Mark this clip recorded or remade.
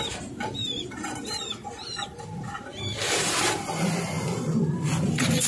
remade